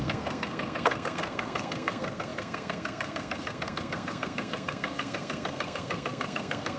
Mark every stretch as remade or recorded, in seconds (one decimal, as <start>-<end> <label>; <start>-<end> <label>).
0.0-6.8 remade